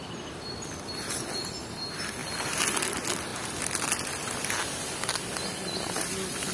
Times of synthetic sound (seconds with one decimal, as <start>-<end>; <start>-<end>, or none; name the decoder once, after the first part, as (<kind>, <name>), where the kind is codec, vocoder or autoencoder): none